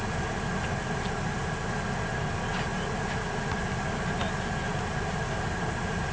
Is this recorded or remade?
recorded